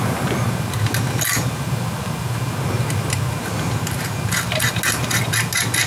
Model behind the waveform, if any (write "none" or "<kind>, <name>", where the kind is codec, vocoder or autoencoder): none